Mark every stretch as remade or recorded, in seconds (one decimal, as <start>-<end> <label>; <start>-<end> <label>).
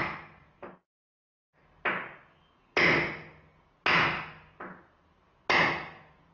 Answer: 0.0-6.3 recorded